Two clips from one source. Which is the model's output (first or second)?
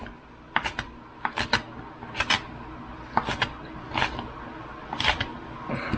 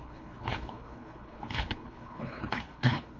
second